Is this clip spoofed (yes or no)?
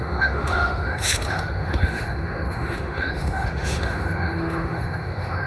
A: yes